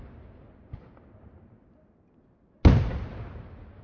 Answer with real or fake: real